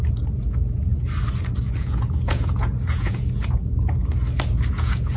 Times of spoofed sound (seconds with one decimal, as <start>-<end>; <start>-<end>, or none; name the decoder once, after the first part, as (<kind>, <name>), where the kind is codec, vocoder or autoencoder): 0.0-0.9 (vocoder, Vocos); 1.8-4.0; 4.7-5.2